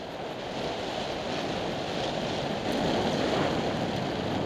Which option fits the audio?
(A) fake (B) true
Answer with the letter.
B